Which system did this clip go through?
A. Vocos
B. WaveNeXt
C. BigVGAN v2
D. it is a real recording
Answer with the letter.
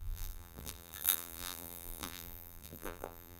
C